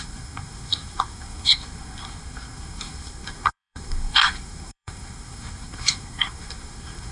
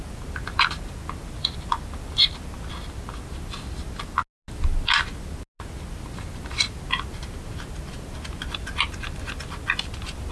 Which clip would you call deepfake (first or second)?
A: first